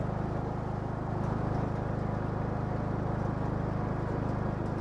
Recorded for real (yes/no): yes